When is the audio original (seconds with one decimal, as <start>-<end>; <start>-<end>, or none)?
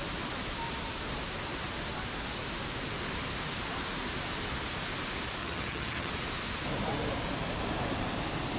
0.0-5.4; 6.1-8.6